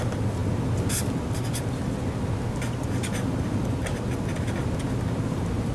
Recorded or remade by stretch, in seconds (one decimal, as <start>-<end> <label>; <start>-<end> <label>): 0.0-5.7 recorded